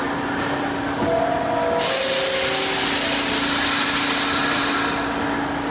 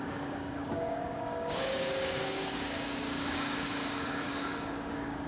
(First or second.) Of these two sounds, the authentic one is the first